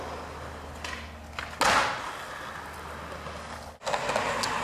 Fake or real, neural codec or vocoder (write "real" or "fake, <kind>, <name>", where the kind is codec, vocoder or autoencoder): real